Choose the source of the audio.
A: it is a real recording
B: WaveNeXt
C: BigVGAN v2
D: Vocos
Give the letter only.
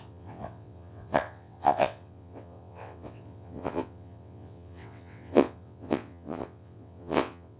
B